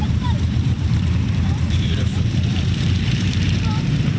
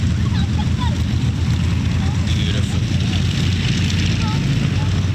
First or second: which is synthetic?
first